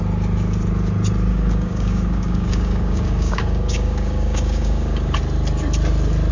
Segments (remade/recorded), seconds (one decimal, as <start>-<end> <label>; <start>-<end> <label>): 0.0-1.3 recorded; 1.3-5.1 remade; 5.1-6.3 recorded